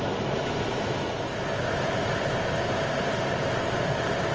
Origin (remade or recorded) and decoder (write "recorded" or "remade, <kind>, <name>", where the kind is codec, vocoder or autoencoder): recorded